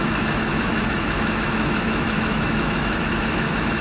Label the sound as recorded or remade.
remade